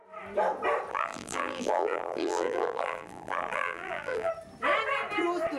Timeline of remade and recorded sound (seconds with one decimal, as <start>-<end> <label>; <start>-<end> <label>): 0.0-0.9 recorded; 0.9-4.3 remade; 4.3-5.6 recorded